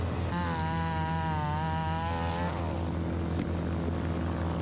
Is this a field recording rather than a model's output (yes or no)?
yes